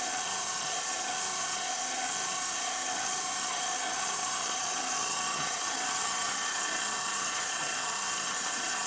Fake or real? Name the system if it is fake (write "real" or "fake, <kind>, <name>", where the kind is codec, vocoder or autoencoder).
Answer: fake, vocoder, HiFi-GAN